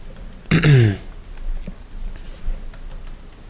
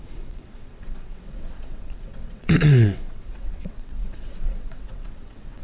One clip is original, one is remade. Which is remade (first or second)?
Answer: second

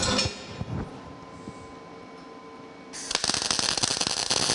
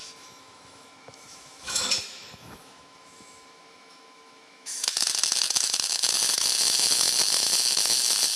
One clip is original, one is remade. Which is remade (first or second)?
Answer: second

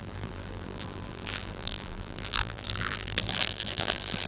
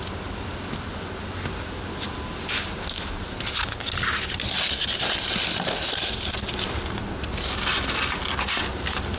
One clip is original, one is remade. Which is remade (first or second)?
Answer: first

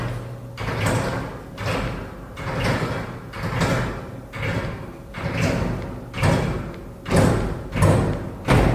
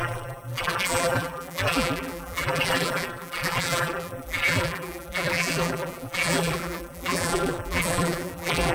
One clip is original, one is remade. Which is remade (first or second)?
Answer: second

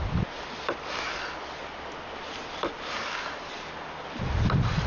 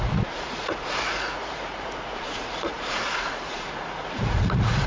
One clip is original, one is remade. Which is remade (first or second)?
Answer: second